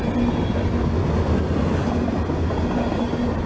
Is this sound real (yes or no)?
yes